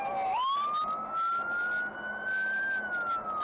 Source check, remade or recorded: recorded